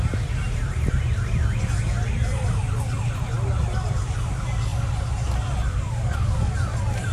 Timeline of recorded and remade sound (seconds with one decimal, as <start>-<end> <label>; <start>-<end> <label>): 0.0-5.7 recorded; 5.7-6.5 remade; 6.5-7.1 recorded